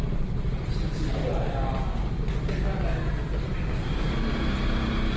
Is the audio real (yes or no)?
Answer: yes